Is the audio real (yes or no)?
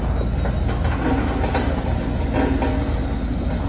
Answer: yes